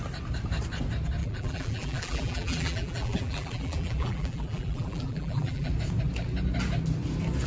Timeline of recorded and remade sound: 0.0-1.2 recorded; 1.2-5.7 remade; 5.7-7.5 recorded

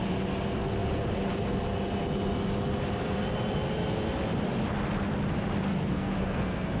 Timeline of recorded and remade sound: 0.0-5.7 recorded; 5.7-6.8 remade

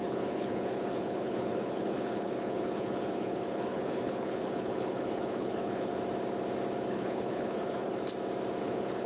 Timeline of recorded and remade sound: 0.0-5.9 remade; 5.9-6.9 recorded; 6.9-8.0 remade; 8.0-8.6 recorded; 8.6-9.1 remade

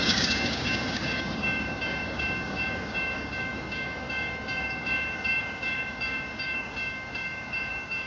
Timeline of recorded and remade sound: 0.0-8.1 remade

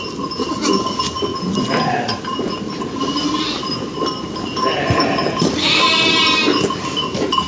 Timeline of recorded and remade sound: 0.0-7.5 recorded